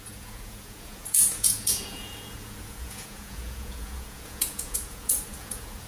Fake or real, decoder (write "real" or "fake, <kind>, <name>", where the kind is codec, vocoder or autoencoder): fake, vocoder, Vocos